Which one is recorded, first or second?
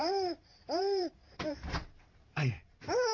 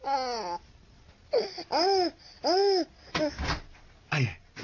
second